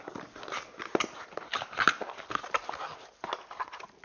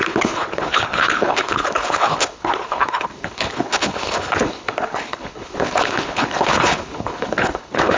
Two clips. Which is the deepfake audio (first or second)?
second